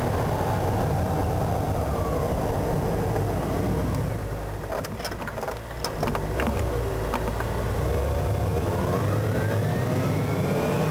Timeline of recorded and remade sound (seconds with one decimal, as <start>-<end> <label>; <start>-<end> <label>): 0.0-10.9 recorded